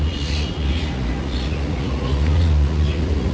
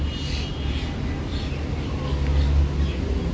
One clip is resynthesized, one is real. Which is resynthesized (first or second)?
first